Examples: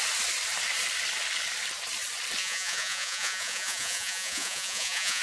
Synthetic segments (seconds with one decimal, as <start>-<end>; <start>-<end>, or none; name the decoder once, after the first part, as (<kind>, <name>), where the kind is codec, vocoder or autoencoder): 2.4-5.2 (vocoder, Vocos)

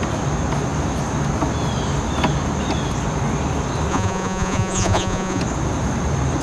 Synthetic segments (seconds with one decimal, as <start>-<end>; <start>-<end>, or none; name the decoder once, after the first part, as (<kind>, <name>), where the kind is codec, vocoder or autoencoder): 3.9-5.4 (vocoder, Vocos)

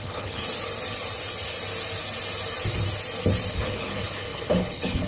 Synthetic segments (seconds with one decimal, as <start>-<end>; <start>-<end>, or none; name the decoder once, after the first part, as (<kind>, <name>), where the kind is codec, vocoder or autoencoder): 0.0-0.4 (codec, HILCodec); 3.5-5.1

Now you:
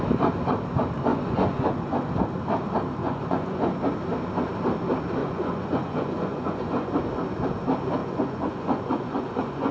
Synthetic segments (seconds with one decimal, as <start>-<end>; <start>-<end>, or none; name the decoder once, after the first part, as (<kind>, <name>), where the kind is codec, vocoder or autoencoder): 1.1-2.1 (vocoder, Vocos); 3.0-3.7; 5.2-6.9; 8.0-9.7